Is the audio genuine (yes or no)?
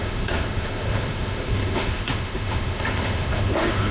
no